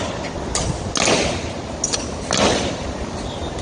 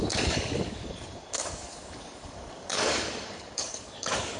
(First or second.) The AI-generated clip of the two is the second